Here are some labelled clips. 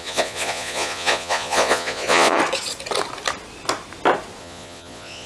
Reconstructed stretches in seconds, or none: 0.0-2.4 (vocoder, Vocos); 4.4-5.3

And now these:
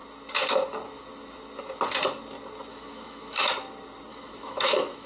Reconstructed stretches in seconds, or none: 2.7-3.5 (autoencoder, DAC-VAE); 4.1-5.1

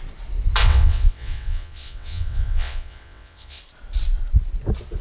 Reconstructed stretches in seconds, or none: 0.6-3.6 (vocoder, WaveNeXt)

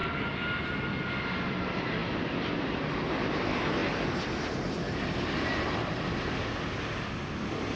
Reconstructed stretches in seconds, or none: none

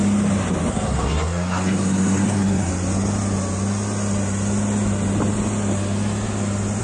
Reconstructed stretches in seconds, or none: 0.7-2.7 (codec, SNAC)